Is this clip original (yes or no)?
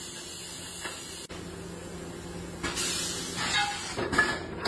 yes